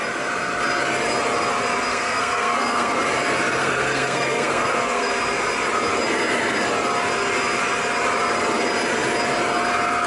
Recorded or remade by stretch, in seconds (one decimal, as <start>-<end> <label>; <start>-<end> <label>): 0.0-1.9 recorded; 1.9-3.0 remade; 3.0-3.6 recorded; 3.6-5.1 remade; 5.1-10.1 recorded